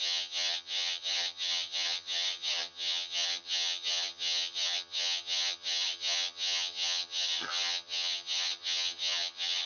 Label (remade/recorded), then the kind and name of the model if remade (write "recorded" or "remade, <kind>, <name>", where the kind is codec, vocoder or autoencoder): remade, vocoder, HiFi-GAN